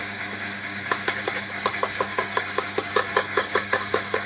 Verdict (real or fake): fake